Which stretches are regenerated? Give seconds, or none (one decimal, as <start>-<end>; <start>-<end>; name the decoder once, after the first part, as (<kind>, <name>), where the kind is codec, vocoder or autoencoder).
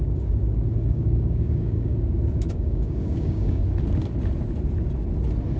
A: 0.0-1.9 (codec, DAC); 2.5-3.6